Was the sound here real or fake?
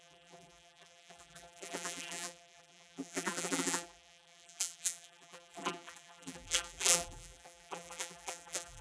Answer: fake